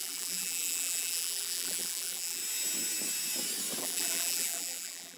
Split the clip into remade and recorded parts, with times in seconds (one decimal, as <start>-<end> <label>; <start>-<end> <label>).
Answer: 0.0-2.4 remade; 2.4-3.8 recorded; 3.8-5.2 remade